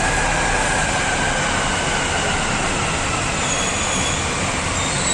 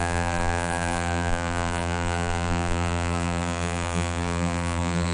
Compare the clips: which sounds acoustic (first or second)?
first